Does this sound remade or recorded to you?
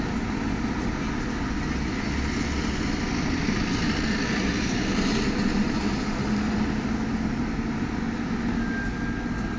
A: recorded